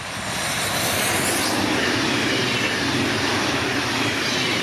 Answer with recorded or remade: recorded